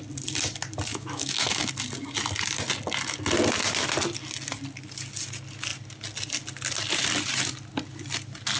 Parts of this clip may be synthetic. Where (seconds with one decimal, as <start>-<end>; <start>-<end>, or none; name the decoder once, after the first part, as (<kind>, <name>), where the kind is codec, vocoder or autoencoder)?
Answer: 0.9-1.7 (autoencoder, DAC-VAE)